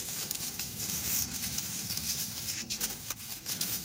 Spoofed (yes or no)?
yes